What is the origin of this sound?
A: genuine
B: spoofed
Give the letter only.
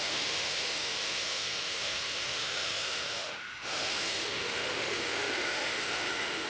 B